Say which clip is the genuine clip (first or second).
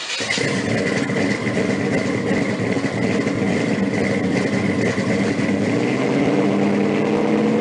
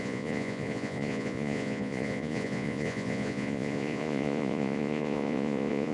first